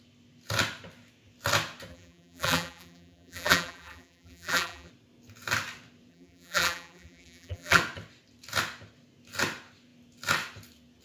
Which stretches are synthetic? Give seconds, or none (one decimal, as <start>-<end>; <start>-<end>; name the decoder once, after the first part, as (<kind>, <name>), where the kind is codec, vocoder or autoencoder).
1.9-4.9 (vocoder, BigVGAN v2); 6.1-7.8